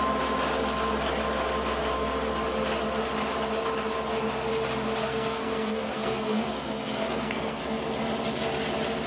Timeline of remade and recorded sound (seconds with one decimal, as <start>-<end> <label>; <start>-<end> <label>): 0.0-5.0 recorded; 5.0-7.6 remade; 7.6-9.1 recorded